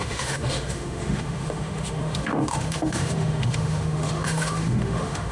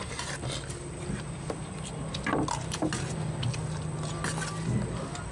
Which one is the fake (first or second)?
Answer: first